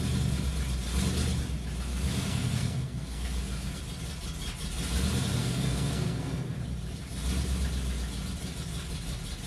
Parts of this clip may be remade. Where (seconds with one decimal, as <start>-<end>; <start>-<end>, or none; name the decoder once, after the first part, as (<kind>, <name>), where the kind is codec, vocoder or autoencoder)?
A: 1.9-3.8 (codec, SNAC); 5.4-6.6